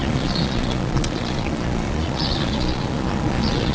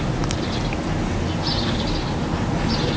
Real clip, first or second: second